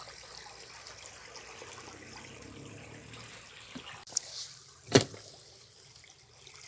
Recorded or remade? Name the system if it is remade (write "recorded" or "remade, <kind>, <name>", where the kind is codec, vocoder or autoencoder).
recorded